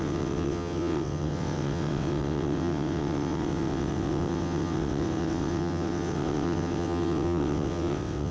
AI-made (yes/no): yes